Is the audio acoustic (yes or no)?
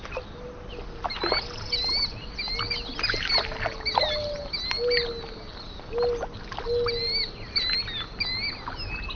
yes